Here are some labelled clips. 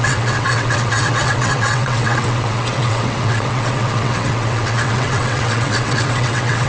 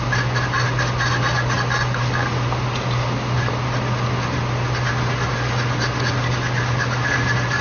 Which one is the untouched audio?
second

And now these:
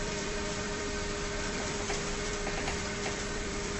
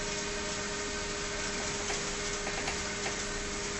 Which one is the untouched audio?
second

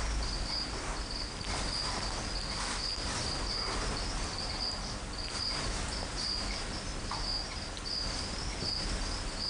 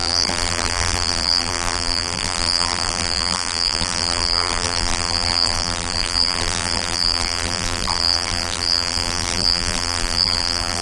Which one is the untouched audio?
first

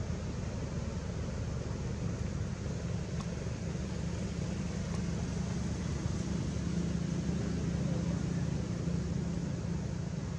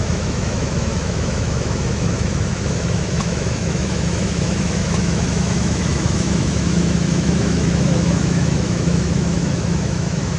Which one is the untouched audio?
first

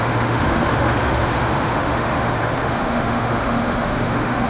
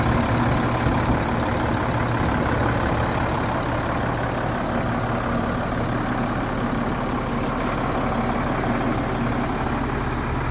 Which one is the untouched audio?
second